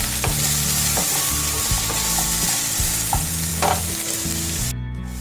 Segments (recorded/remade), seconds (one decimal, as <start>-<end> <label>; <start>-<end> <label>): 0.0-5.2 recorded

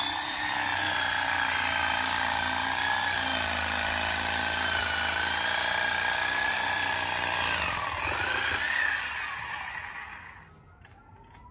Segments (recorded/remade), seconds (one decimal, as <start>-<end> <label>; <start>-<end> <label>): 0.0-11.5 recorded

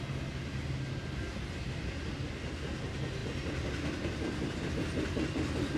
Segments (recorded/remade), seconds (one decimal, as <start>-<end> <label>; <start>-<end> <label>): 0.0-5.8 recorded